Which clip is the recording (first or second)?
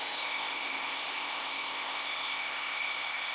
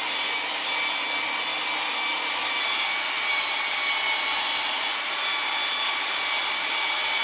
second